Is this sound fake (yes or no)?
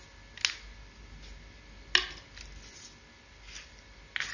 no